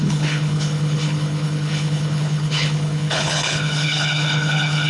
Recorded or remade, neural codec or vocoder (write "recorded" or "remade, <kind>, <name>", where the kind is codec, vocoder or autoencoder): remade, codec, HILCodec